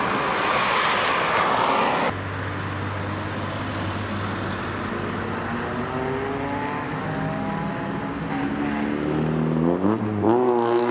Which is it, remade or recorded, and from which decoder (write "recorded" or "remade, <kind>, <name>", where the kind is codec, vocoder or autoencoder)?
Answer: recorded